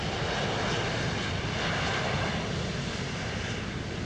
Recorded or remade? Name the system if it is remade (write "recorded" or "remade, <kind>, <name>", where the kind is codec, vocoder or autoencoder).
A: recorded